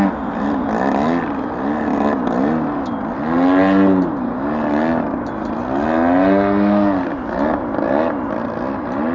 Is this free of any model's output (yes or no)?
yes